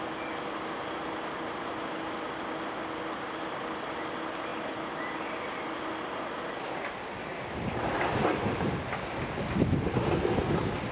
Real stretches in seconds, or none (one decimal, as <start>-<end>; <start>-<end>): 0.0-10.9